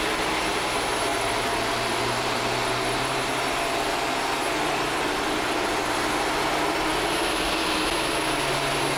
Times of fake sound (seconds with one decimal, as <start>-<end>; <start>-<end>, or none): 1.1-3.1